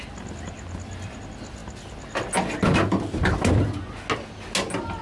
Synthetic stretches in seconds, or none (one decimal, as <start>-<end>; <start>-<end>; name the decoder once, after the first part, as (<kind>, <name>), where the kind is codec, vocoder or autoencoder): none